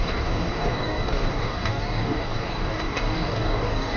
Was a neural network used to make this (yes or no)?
yes